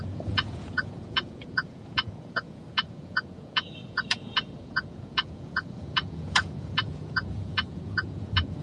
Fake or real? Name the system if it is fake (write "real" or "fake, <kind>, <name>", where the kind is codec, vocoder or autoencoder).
fake, vocoder, Vocos